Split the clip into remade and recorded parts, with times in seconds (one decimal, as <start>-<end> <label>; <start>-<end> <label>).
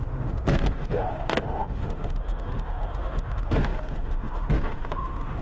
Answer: 0.0-5.4 remade